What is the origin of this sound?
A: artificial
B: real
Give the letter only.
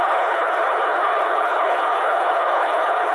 A